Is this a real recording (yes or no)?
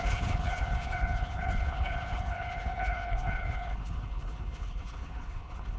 no